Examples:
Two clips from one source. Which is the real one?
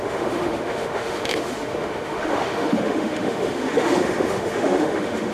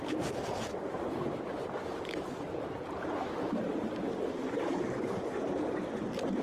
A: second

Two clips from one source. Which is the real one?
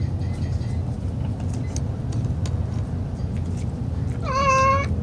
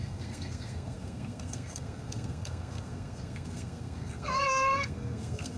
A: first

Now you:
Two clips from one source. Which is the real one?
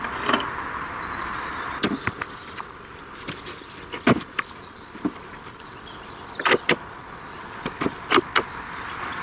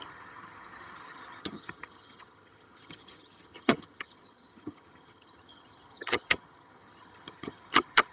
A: first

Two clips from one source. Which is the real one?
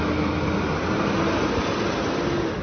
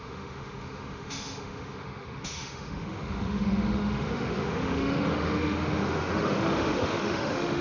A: first